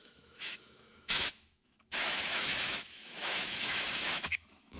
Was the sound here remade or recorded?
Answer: remade